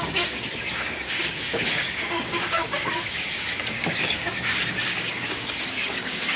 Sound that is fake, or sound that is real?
fake